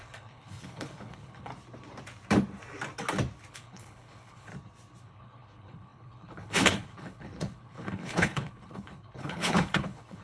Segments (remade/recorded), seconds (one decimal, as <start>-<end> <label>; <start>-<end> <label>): 0.0-1.5 remade; 1.5-3.5 recorded; 3.5-4.5 remade; 4.5-5.0 recorded; 5.0-10.2 remade